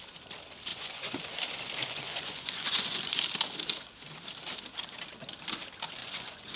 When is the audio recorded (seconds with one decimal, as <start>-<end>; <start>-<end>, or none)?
0.0-0.7; 1.4-1.8; 3.2-6.0